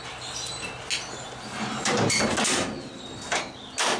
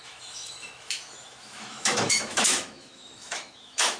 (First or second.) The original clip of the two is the first